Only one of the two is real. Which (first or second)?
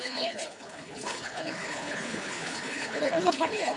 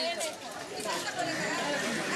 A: second